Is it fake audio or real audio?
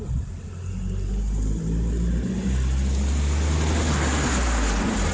real